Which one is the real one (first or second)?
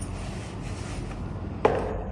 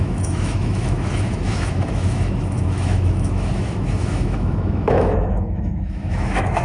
first